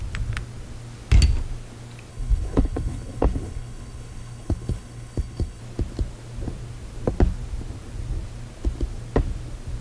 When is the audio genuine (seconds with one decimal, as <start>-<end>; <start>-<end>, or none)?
0.0-2.1; 5.6-9.8